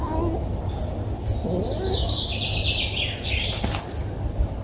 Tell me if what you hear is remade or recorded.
recorded